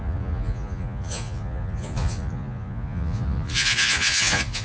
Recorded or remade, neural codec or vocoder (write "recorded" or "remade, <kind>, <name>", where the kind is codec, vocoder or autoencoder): remade, vocoder, Vocos